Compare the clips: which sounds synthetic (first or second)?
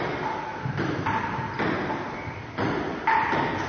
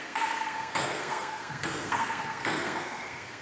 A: second